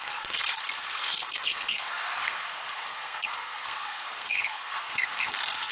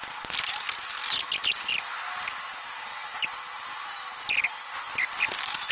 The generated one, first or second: first